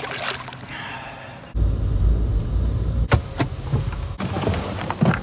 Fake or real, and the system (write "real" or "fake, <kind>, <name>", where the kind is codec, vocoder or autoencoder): real